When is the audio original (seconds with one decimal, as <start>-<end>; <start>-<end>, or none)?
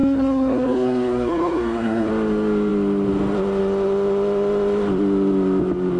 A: 2.1-6.0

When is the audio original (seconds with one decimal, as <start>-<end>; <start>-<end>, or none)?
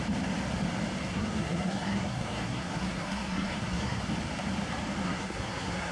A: 0.0-1.1; 4.0-5.0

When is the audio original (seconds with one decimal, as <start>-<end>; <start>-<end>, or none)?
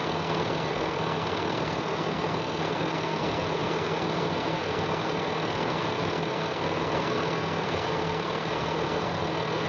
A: none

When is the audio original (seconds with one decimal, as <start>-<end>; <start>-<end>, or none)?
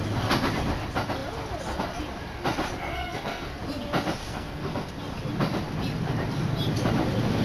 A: 0.0-2.8; 3.6-4.2; 4.9-7.4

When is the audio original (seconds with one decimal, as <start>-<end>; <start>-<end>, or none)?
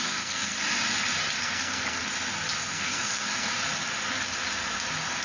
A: 0.5-1.4; 2.0-2.7; 3.5-5.2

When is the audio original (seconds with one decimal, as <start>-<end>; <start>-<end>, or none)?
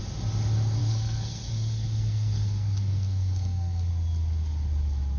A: 0.0-0.8; 3.9-5.2